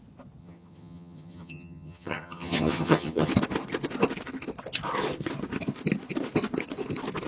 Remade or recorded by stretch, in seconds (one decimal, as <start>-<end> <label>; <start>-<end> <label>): 0.0-0.4 recorded; 0.4-3.3 remade; 3.3-7.3 recorded